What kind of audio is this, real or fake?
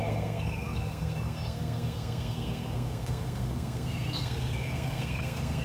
fake